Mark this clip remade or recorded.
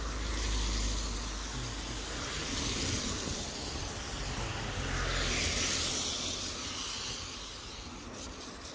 recorded